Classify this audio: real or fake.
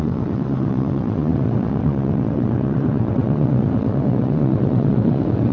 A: fake